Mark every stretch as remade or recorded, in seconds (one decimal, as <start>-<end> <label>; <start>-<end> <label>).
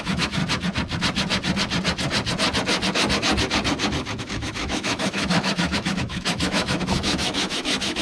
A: 0.0-0.4 remade; 0.4-4.2 recorded; 4.2-8.0 remade